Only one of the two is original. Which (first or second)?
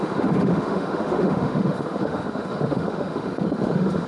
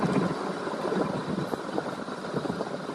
second